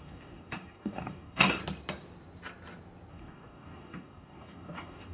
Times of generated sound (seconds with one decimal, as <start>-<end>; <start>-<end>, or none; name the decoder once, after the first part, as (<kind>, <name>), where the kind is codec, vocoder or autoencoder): 0.0-1.6 (codec, DAC); 3.1-5.1